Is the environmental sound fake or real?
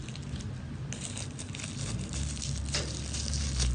real